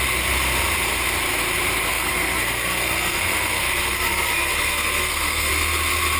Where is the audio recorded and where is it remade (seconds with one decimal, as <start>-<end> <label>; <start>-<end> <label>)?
0.0-1.9 recorded; 1.9-5.5 remade; 5.5-6.2 recorded